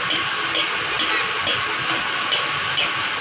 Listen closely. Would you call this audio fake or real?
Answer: real